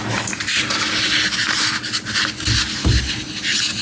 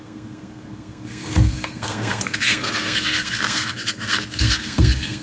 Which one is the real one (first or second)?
first